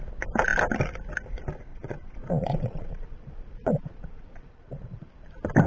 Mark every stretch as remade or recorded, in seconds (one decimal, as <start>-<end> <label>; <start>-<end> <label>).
0.0-1.7 recorded; 1.7-5.1 remade; 5.1-5.7 recorded

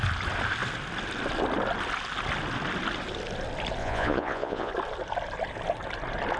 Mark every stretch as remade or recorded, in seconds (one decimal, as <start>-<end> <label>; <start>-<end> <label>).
0.0-3.8 recorded; 3.8-4.7 remade; 4.7-6.4 recorded

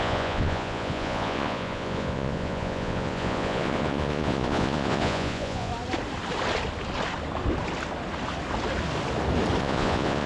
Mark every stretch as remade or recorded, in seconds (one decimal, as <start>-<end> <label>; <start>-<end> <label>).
0.0-5.7 remade; 5.7-9.6 recorded; 9.6-10.3 remade

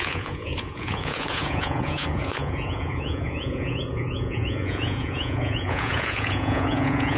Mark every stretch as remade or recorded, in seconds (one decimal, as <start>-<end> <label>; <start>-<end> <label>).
0.0-7.2 remade